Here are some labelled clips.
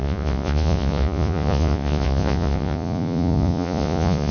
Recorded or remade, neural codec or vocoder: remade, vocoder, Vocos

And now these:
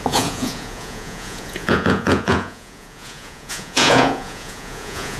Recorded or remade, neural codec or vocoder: remade, vocoder, Vocos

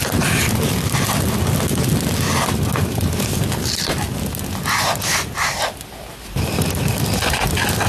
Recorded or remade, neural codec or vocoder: recorded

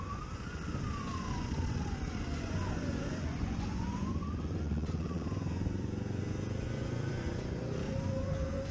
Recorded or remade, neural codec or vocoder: remade, vocoder, Vocos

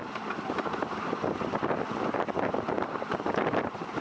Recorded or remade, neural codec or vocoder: recorded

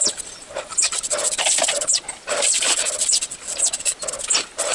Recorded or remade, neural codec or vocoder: recorded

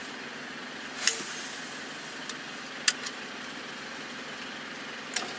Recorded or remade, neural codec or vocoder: recorded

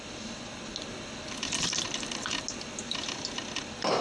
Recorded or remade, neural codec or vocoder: recorded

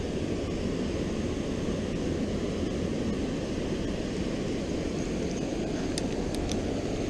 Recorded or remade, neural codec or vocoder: recorded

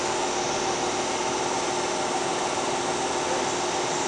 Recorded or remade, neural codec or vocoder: recorded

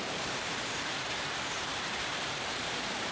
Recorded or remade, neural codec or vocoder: remade, vocoder, BigVGAN v2